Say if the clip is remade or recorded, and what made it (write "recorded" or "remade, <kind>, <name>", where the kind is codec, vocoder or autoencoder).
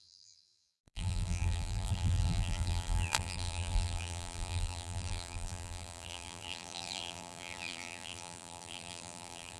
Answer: remade, vocoder, BigVGAN v2